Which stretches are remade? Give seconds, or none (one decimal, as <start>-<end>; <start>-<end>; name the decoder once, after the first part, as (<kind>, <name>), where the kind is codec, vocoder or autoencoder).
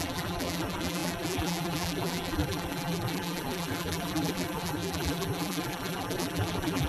0.0-6.9 (vocoder, BigVGAN v2)